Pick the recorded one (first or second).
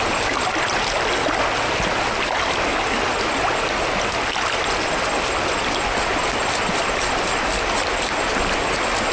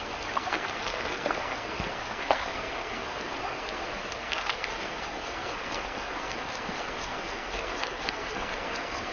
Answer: first